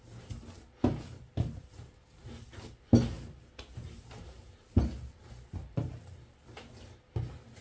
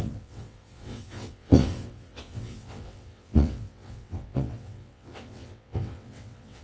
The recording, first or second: first